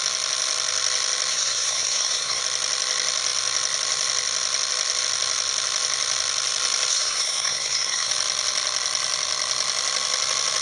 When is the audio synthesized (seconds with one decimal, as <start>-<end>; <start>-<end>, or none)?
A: 1.3-2.4; 6.9-8.1